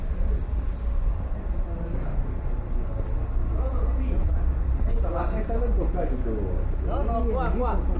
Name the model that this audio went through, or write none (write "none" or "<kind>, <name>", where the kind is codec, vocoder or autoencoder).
none